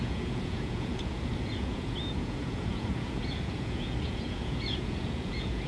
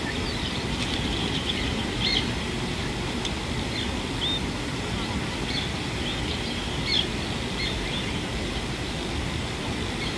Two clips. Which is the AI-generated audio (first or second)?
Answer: first